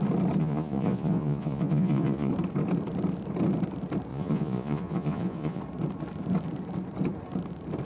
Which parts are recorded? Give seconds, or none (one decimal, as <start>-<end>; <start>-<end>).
0.0-0.4; 2.3-4.1; 5.6-7.8